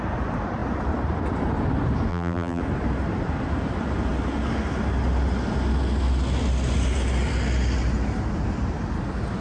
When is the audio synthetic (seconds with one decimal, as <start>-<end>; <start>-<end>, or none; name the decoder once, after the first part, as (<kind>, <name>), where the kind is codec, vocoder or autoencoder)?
2.1-2.6 (vocoder, BigVGAN v2)